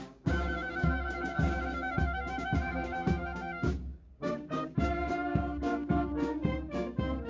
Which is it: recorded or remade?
remade